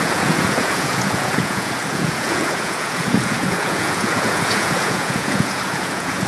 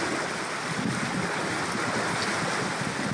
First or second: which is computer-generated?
first